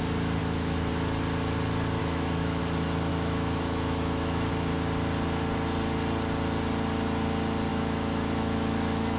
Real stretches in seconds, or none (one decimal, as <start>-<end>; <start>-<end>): 0.0-0.4; 0.9-2.0; 2.6-3.1; 4.5-7.7